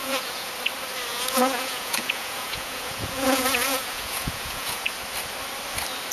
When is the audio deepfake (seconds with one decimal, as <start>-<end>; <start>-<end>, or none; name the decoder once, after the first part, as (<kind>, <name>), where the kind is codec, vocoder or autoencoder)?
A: 0.0-0.5 (vocoder, Vocos); 1.1-4.8